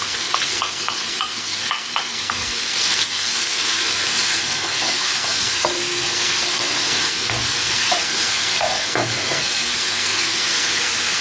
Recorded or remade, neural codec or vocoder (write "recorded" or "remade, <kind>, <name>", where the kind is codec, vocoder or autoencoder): remade, codec, SNAC